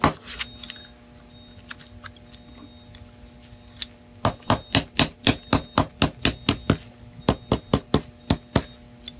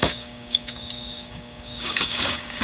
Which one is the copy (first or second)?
second